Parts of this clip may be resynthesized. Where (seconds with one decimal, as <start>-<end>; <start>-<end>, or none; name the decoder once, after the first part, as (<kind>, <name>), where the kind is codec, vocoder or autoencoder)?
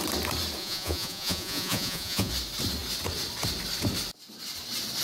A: 0.6-2.3 (vocoder, Vocos)